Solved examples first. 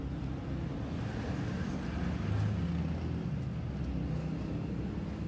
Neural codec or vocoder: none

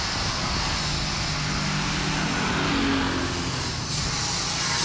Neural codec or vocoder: none